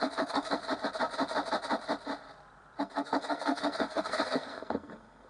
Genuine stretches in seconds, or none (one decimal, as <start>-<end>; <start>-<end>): 0.6-2.8